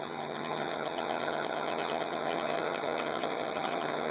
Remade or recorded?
remade